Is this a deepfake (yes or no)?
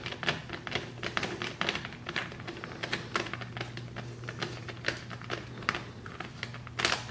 no